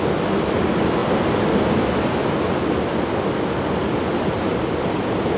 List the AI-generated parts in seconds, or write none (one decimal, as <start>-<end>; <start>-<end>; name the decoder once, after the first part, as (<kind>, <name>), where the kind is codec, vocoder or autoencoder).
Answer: none